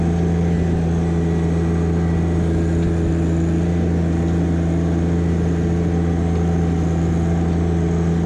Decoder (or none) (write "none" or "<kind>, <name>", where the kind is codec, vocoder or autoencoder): none